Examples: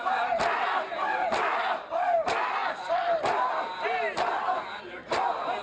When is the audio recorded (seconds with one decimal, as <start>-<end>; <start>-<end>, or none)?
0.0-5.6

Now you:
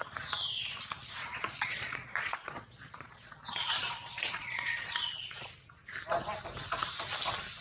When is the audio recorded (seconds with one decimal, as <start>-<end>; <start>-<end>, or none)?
0.0-1.3; 5.5-7.6

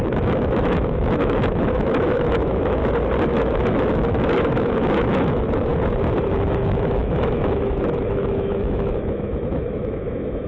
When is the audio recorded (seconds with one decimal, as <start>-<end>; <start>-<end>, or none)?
2.8-3.3; 5.7-6.3

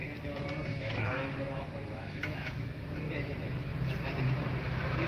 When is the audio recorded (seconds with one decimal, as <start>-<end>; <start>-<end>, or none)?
0.0-0.7; 2.8-5.1